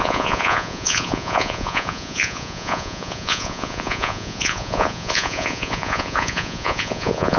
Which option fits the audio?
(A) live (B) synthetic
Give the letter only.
B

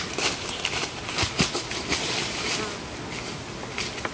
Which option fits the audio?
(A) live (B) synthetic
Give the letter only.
A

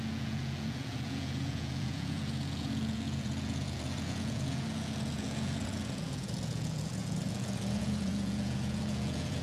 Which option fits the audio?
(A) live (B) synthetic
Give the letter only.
B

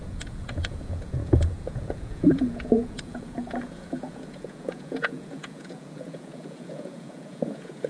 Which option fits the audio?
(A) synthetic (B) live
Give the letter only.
A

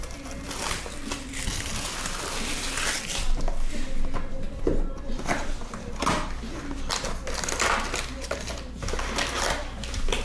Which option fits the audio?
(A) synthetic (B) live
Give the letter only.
B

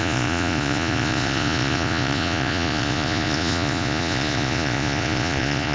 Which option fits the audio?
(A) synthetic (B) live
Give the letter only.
A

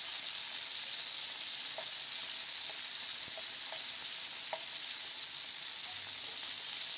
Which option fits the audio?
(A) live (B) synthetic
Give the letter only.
A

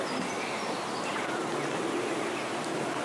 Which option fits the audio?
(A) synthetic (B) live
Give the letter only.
B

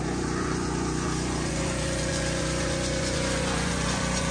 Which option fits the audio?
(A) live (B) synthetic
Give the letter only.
B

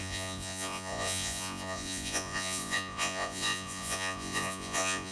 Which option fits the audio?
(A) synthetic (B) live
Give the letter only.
A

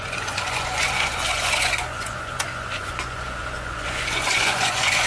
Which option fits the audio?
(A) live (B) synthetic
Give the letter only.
B